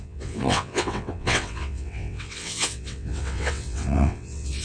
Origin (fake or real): fake